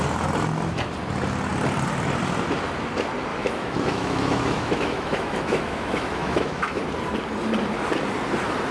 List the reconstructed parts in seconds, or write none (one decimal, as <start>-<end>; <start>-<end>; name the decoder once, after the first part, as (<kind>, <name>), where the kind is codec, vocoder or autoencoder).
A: 3.3-6.8 (autoencoder, DAC-VAE)